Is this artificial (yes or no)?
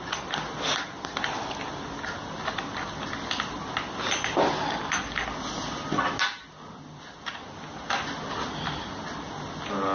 no